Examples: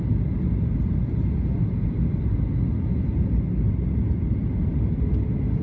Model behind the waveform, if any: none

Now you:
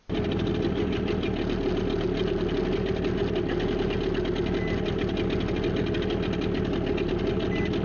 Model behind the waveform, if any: none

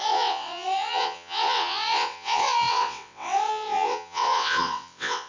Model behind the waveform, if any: vocoder, WaveNeXt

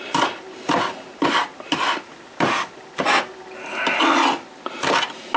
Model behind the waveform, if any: none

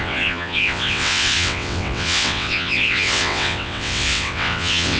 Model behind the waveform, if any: vocoder, WaveNeXt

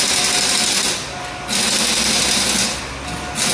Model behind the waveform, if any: none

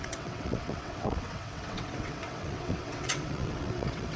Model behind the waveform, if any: vocoder, WaveNeXt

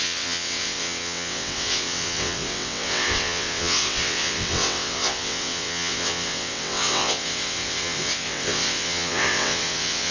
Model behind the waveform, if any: vocoder, WaveNeXt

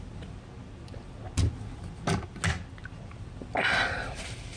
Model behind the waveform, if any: none